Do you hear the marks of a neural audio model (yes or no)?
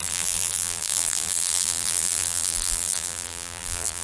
yes